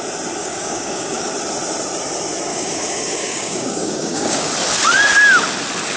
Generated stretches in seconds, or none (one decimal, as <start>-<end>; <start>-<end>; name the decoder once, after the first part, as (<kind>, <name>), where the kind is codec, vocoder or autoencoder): 0.4-1.3 (codec, DAC); 2.5-4.5